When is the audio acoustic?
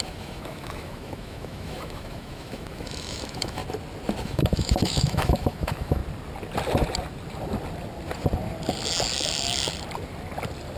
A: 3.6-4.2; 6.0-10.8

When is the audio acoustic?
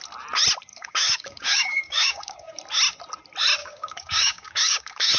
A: 0.0-0.7; 2.6-3.6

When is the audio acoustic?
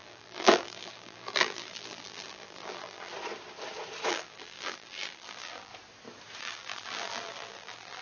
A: 3.1-4.1; 5.7-6.4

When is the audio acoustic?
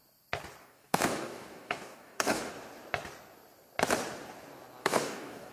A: 0.0-0.6; 2.5-4.8